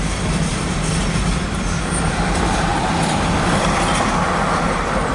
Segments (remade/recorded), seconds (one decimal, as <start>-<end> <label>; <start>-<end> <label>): 0.0-5.1 recorded